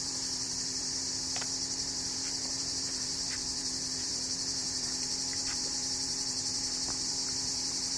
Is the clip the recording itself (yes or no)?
no